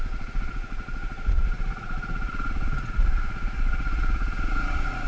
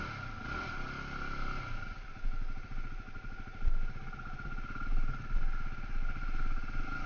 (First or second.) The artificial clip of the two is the first